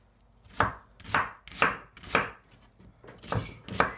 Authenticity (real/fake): real